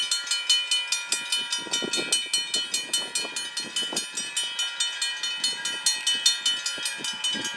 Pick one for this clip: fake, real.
real